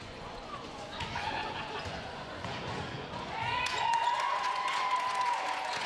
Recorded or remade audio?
remade